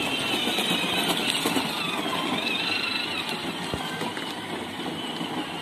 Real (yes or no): yes